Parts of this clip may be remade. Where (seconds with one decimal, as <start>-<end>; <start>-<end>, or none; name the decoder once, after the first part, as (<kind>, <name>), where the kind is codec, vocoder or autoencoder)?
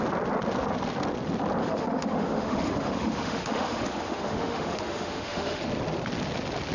1.6-5.6 (autoencoder, DAC-VAE)